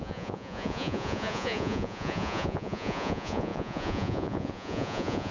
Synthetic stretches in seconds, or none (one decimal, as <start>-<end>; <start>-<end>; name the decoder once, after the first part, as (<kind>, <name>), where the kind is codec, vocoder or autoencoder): 0.0-5.3 (vocoder, Vocos)